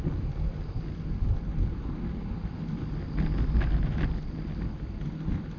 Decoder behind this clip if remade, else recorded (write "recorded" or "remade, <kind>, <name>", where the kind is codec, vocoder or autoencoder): recorded